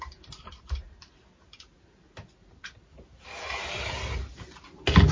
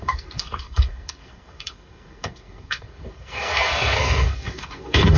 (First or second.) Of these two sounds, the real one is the first